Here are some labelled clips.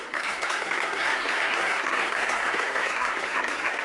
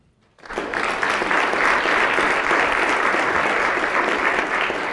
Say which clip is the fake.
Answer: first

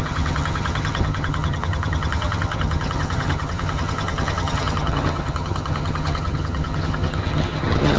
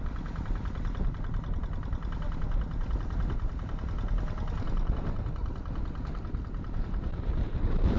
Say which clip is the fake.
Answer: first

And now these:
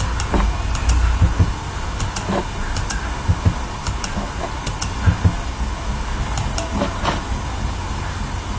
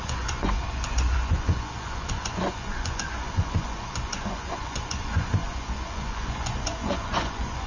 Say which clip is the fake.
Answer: second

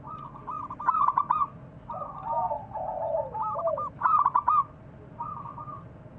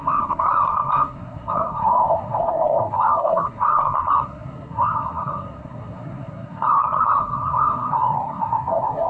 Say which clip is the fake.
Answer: second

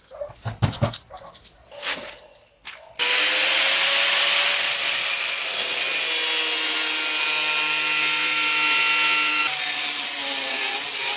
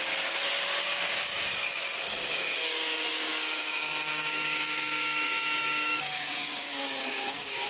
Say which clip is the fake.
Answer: second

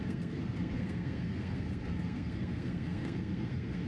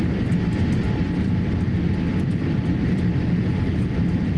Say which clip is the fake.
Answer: first